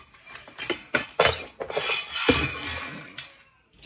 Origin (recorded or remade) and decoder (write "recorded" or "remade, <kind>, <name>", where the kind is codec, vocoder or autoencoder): recorded